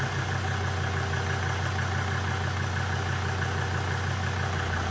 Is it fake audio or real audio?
real